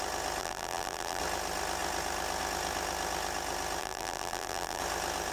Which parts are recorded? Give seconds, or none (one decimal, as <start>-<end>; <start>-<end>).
0.0-0.4; 1.2-3.8; 4.8-5.3